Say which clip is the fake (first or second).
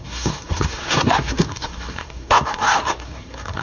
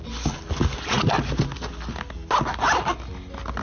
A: first